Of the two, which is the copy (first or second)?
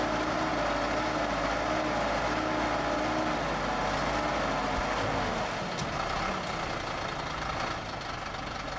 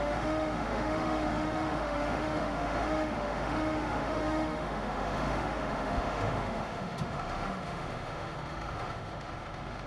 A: second